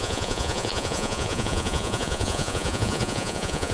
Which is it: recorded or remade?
remade